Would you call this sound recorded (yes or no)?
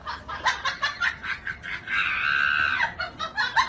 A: yes